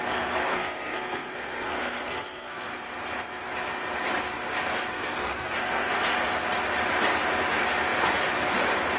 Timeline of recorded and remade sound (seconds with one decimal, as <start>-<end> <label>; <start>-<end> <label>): 0.0-0.5 recorded; 0.5-2.7 remade; 2.7-4.9 recorded; 4.9-5.9 remade; 5.9-9.0 recorded